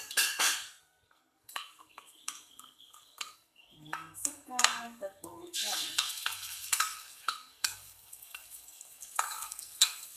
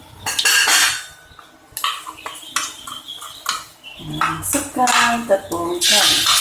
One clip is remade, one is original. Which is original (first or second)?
second